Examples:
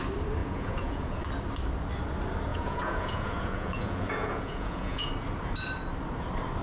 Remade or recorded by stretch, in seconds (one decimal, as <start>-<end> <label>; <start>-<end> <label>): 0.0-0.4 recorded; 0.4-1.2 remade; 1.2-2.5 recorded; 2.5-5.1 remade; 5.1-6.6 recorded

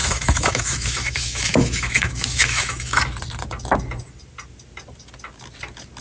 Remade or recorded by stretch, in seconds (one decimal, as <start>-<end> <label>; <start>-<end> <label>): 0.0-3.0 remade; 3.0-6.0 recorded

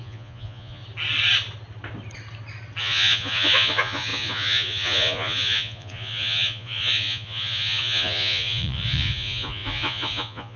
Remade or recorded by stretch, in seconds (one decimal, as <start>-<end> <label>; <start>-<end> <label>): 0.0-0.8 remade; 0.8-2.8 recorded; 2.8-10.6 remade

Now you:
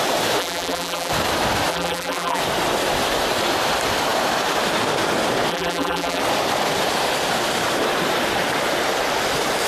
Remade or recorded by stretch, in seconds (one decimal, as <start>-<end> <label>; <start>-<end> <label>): 0.0-0.4 recorded; 0.4-1.1 remade; 1.1-1.7 recorded; 1.7-2.4 remade; 2.4-5.5 recorded; 5.5-6.2 remade; 6.2-9.7 recorded

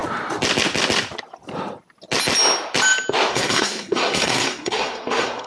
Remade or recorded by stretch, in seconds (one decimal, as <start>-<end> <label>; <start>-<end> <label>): 0.0-3.3 recorded; 3.3-5.5 remade

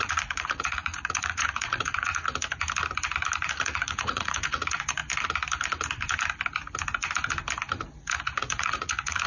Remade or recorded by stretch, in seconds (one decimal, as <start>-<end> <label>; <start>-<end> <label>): 0.0-2.1 remade; 2.1-3.5 recorded; 3.5-5.0 remade; 5.0-8.0 recorded; 8.0-9.3 remade

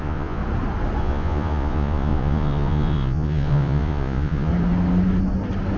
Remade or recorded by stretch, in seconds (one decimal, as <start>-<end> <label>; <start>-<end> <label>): 0.0-0.4 remade; 0.4-1.0 recorded; 1.0-4.5 remade; 4.5-5.8 recorded